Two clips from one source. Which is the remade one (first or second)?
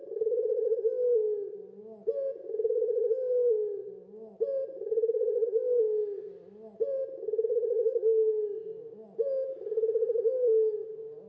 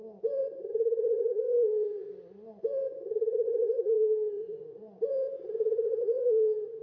second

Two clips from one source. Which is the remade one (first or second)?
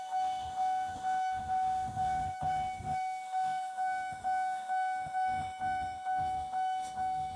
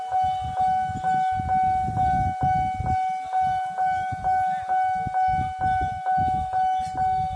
first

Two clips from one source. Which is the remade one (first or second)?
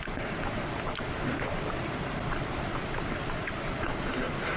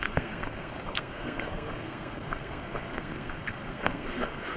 second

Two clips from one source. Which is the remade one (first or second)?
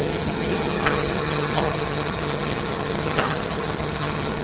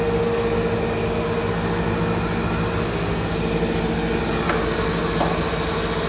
first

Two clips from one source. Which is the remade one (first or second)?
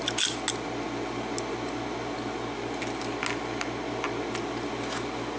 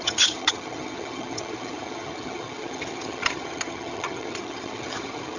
second